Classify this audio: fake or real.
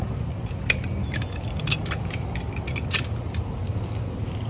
real